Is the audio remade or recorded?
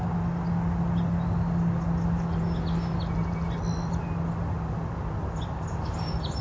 recorded